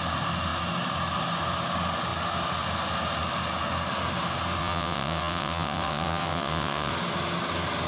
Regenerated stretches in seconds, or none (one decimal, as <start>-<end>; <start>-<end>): 4.6-6.9